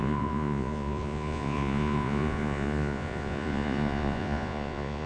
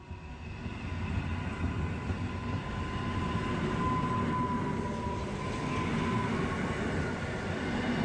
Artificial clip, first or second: first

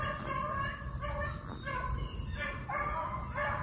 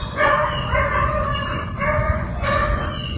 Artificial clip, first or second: second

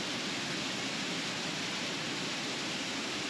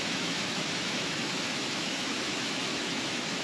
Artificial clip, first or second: second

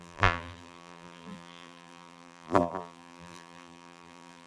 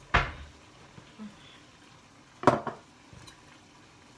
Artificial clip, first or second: first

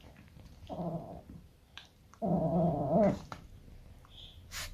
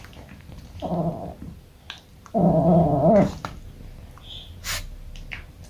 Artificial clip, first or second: first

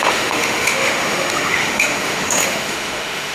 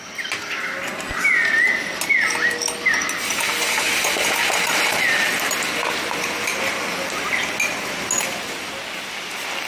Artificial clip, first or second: first